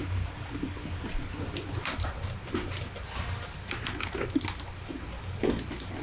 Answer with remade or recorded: recorded